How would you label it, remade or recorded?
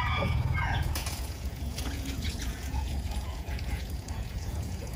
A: remade